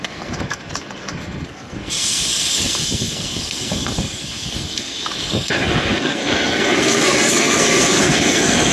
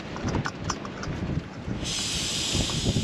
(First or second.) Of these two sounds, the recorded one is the second